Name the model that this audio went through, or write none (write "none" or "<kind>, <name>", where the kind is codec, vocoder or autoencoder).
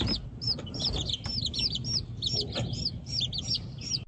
none